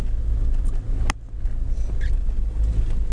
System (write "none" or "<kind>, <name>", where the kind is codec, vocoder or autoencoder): none